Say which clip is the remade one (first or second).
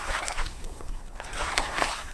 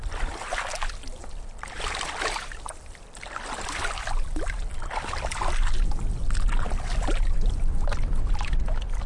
first